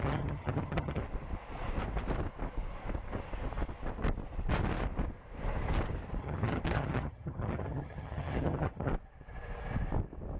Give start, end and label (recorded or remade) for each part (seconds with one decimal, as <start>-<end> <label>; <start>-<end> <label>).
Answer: 0.0-1.0 remade; 1.0-6.2 recorded; 6.2-8.9 remade; 8.9-10.4 recorded